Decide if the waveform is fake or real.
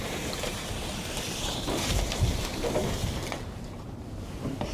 fake